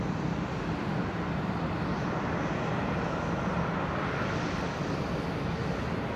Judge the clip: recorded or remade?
recorded